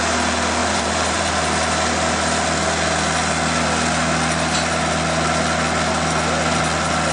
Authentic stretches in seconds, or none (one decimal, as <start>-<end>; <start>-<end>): 0.0-0.6; 1.3-7.1